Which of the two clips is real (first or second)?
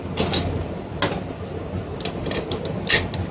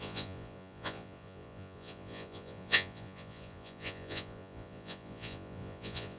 first